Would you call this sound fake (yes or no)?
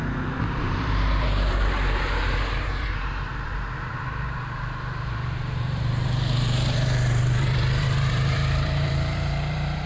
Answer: yes